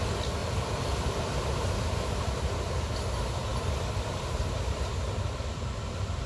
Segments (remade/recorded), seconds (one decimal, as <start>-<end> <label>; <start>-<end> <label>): 0.0-0.4 recorded; 0.4-1.6 remade; 1.6-3.5 recorded; 3.5-6.3 remade